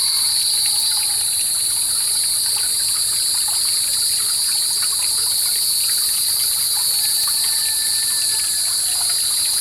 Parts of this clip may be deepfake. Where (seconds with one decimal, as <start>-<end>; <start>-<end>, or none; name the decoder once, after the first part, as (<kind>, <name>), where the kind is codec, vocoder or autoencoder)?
none